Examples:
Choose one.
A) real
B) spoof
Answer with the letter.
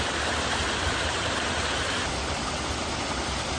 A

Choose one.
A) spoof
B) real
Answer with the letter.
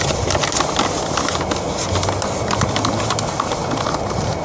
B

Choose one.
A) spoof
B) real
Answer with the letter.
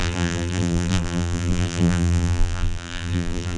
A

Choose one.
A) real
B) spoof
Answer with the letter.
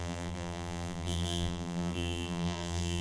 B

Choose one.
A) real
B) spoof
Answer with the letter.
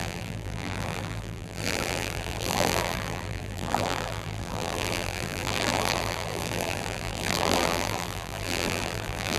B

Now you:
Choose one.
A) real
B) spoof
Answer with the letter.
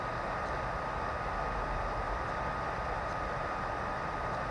A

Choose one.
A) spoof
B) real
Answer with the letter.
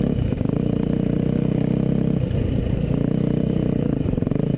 A